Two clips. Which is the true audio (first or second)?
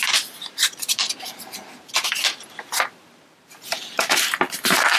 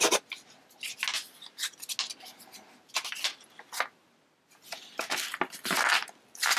second